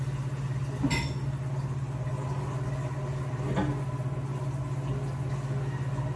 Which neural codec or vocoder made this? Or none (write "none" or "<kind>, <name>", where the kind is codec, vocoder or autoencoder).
none